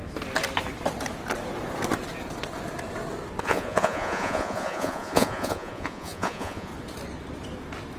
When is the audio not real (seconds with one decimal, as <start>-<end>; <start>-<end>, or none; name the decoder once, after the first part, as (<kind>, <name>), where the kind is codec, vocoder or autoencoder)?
3.4-6.7 (vocoder, Vocos)